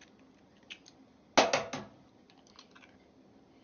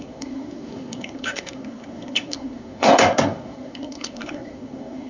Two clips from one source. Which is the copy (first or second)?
second